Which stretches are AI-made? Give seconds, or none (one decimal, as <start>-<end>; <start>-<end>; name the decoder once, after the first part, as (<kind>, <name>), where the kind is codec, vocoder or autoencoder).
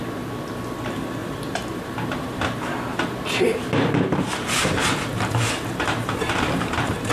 1.2-2.4 (vocoder, BigVGAN v2); 2.9-7.1